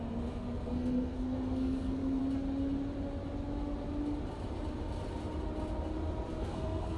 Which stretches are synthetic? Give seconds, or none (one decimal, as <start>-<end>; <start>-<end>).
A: 0.0-2.2; 6.4-7.0